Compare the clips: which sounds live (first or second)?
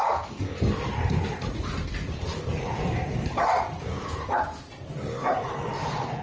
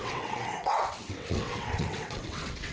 first